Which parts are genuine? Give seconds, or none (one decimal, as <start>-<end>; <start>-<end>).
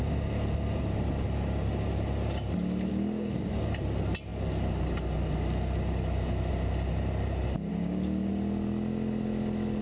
0.0-2.9; 3.5-7.7; 8.3-9.8